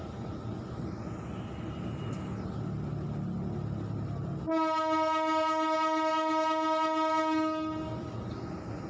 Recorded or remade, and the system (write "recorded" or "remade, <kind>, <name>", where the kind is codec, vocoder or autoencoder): recorded